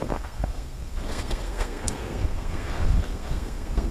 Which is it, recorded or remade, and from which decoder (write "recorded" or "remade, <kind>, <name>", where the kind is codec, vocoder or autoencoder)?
remade, codec, SNAC